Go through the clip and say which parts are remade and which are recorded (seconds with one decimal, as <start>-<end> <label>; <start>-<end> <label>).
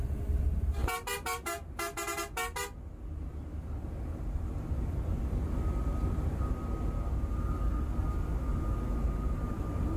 0.0-10.0 recorded